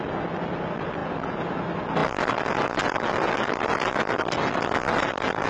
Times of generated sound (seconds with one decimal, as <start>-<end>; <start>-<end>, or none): none